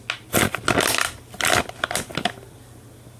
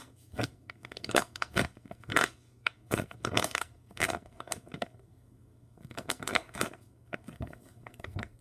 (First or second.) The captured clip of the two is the first